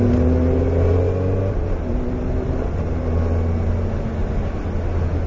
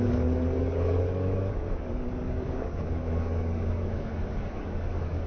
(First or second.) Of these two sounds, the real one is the first